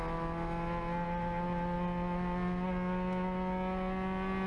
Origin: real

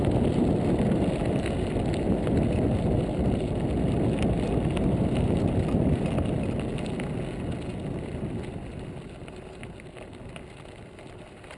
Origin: real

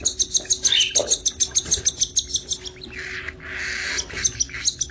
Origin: real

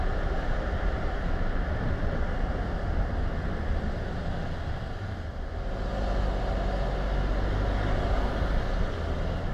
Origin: real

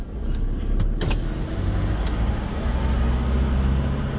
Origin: real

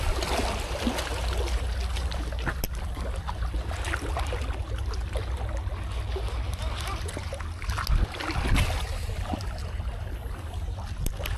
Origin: real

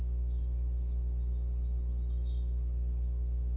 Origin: real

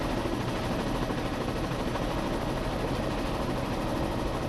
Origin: real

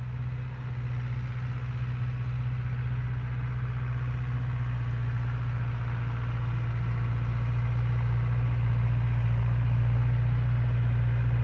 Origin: real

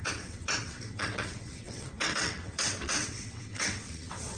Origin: fake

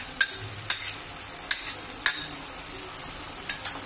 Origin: real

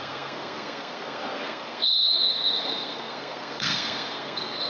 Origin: fake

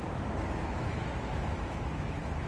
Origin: fake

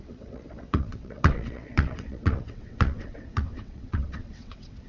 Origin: fake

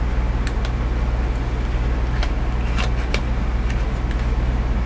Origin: real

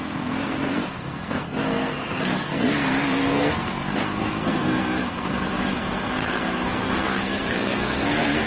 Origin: fake